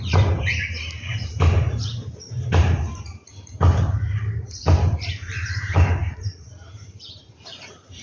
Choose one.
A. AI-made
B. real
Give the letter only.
A